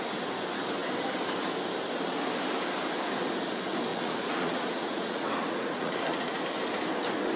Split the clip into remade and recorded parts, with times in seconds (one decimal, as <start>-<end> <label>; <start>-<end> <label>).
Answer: 0.0-3.9 recorded; 3.9-6.4 remade; 6.4-7.4 recorded